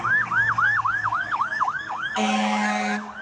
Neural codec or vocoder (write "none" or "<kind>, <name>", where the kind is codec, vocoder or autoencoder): codec, DAC